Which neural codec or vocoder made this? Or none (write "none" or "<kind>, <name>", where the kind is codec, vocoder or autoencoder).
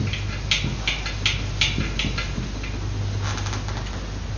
none